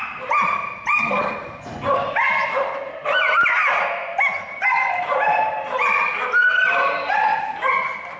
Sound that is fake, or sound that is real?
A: real